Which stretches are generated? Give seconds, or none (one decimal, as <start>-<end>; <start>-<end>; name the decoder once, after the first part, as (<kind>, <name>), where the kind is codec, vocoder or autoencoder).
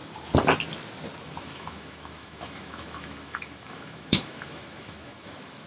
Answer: 1.4-5.7 (autoencoder, DAC-VAE)